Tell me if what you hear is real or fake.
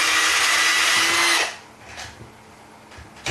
real